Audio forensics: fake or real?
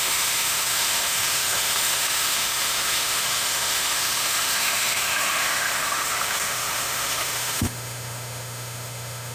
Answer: fake